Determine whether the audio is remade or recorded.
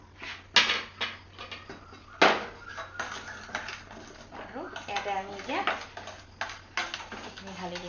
recorded